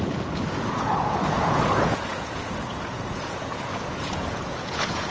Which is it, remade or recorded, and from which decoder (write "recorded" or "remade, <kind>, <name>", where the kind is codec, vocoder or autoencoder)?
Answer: remade, vocoder, Vocos